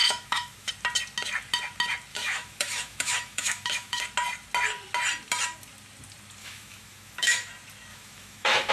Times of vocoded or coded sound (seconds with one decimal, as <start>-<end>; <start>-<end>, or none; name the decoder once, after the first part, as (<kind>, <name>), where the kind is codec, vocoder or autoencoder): 0.0-0.7 (autoencoder, DAC-VAE); 2.1-4.0; 6.4-7.5; 7.9-8.7